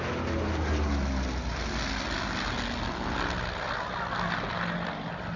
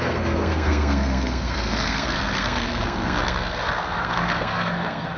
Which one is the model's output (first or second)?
second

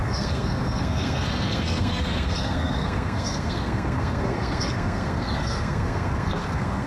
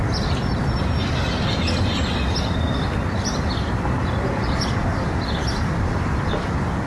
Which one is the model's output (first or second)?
first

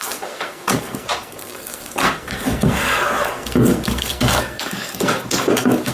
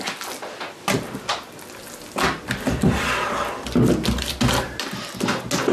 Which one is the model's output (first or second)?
first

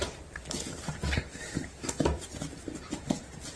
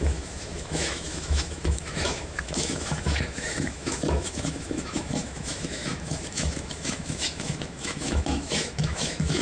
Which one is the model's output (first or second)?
second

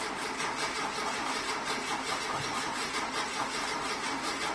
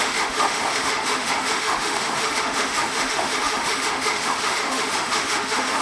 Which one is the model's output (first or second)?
second